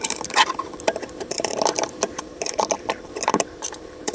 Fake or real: fake